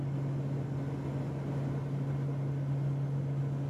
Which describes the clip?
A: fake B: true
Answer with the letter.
B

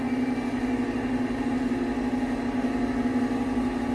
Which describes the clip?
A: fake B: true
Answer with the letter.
B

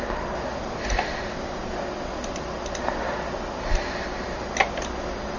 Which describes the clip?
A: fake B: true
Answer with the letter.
B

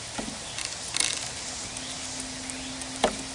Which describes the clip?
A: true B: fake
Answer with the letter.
A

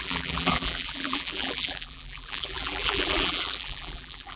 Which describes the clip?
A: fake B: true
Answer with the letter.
A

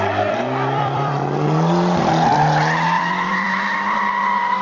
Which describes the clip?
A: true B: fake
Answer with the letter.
B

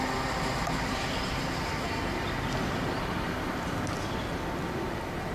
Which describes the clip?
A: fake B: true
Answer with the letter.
B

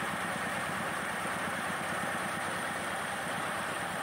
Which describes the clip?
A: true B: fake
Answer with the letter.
B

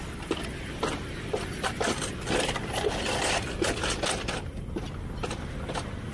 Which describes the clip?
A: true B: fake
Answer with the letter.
A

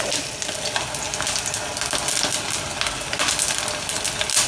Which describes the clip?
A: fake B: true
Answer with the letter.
B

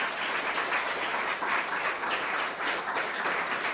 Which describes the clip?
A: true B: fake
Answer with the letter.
A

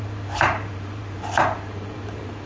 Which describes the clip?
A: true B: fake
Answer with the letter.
B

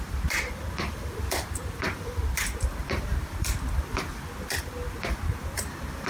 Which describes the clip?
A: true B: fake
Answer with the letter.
B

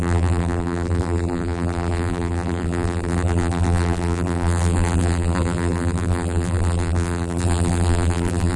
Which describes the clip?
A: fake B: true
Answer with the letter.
A